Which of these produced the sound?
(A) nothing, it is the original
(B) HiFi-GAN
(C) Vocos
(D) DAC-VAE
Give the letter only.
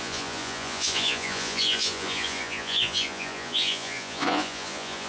C